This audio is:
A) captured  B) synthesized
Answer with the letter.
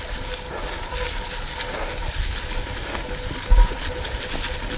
A